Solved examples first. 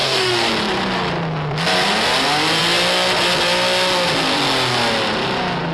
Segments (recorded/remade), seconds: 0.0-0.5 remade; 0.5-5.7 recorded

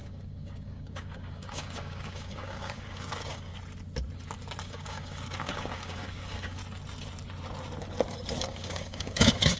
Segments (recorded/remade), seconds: 0.0-3.5 remade; 3.5-4.6 recorded; 4.6-6.6 remade; 6.6-8.4 recorded; 8.4-9.6 remade

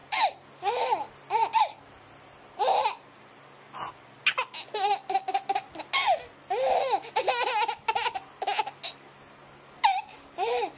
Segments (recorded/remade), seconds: 0.0-10.8 recorded